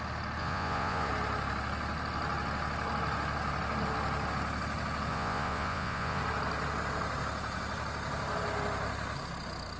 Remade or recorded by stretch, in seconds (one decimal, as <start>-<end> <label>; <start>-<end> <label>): 0.0-0.4 recorded; 0.4-1.1 remade; 1.1-5.1 recorded; 5.1-6.2 remade; 6.2-9.8 recorded

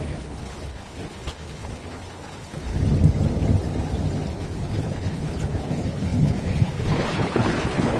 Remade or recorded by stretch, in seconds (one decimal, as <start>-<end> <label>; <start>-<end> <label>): 0.0-2.7 remade; 2.7-4.3 recorded; 4.3-8.0 remade

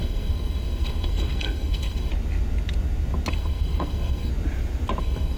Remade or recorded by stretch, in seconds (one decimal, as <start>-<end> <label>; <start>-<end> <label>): 0.0-2.1 remade; 2.1-3.3 recorded; 3.3-4.3 remade; 4.3-5.0 recorded; 5.0-5.4 remade

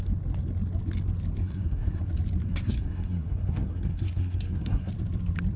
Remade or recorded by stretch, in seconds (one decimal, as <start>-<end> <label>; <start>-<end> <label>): 0.0-1.4 recorded; 1.4-2.0 remade; 2.0-2.4 recorded; 2.4-4.9 remade; 4.9-5.6 recorded

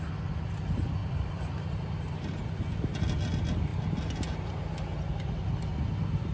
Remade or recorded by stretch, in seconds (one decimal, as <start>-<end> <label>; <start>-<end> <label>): 0.0-1.0 recorded; 1.0-2.3 remade; 2.3-6.3 recorded

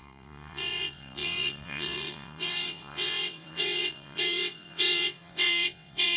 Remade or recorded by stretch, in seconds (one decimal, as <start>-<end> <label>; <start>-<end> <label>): 0.0-6.2 remade

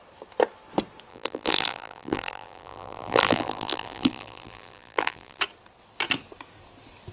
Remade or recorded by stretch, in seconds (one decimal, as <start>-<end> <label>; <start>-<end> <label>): 0.0-1.1 recorded; 1.1-5.4 remade; 5.4-7.1 recorded